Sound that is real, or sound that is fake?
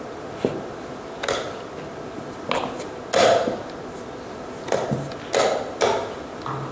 real